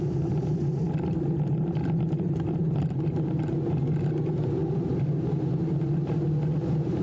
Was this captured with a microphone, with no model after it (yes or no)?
yes